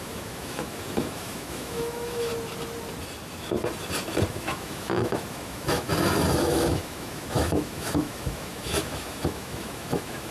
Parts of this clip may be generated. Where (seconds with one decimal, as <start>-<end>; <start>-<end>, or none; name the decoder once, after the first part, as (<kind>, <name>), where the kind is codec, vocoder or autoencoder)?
0.0-2.3 (autoencoder, DAC-VAE); 4.3-5.9; 6.4-10.3